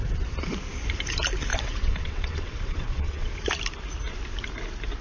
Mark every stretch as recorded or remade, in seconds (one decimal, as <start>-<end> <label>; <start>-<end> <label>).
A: 0.0-1.5 recorded; 1.5-3.3 remade; 3.3-5.0 recorded